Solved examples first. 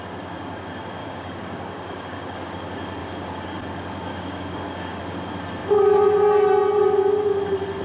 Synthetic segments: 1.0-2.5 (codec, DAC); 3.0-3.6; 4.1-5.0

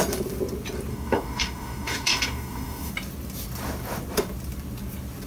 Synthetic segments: 0.9-2.9 (codec, DAC)

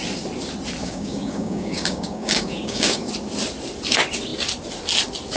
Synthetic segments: 0.8-3.1 (codec, DAC)

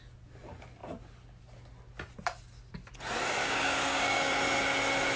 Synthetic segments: 3.4-4.3 (codec, DAC)